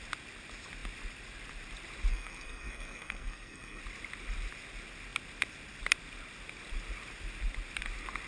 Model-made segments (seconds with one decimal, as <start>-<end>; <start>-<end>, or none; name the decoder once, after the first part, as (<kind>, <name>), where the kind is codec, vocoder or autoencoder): 2.1-3.8 (codec, SNAC)